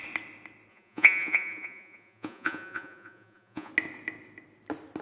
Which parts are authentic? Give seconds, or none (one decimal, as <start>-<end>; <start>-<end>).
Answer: 0.0-0.7; 3.7-5.0